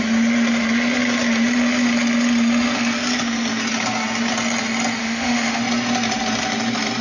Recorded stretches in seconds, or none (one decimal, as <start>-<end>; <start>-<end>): 0.0-5.0; 5.6-7.0